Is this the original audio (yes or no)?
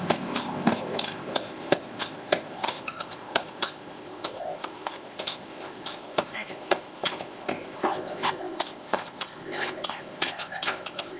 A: no